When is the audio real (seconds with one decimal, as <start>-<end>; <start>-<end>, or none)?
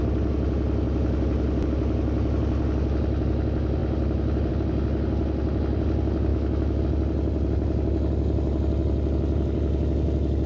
0.0-6.3; 6.8-10.5